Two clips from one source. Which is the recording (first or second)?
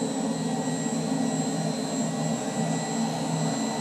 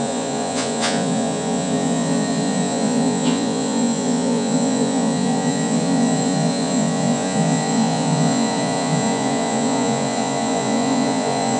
first